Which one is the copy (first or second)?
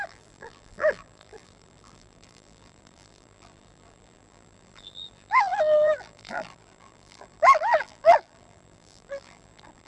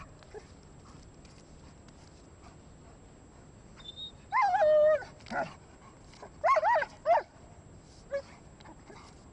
first